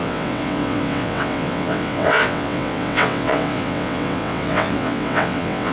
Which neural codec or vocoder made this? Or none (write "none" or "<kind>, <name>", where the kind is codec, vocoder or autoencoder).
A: vocoder, WaveNeXt